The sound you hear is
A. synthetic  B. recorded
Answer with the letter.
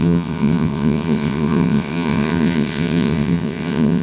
A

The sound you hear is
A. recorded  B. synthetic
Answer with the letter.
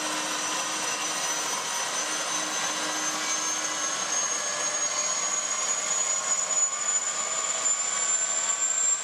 A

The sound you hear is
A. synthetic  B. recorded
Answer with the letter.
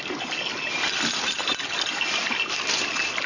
B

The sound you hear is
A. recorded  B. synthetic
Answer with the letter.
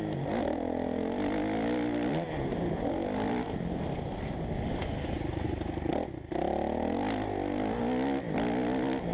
A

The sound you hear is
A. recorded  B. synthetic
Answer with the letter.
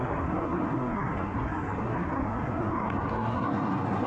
B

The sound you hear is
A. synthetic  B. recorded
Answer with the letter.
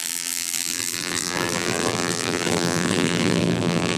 A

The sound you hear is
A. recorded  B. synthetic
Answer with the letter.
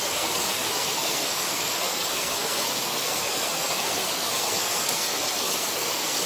B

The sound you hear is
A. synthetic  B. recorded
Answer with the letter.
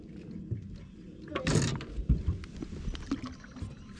B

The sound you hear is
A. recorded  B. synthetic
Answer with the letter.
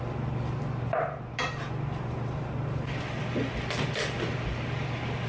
A